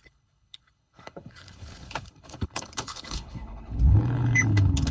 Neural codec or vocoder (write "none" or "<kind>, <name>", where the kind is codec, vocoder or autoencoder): codec, HILCodec